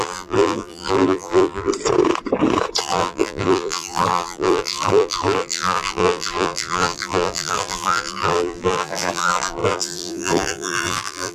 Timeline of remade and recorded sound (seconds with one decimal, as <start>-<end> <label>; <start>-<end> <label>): 0.0-1.7 remade; 1.7-2.8 recorded; 2.8-11.3 remade